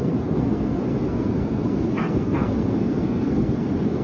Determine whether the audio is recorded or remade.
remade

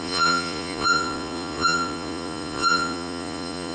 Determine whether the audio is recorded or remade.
remade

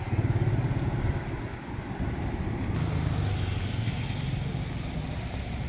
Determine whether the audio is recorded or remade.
recorded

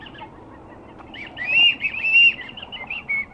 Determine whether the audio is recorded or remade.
recorded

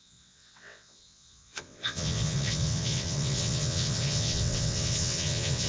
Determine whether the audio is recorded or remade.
remade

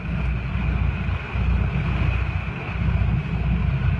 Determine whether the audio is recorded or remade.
recorded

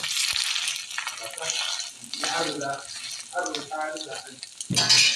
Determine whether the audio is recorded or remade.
recorded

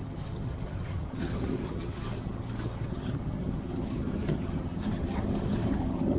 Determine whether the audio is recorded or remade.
remade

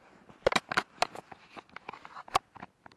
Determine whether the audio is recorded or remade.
recorded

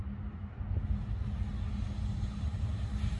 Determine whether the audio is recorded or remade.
recorded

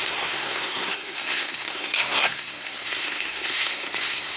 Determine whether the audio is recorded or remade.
remade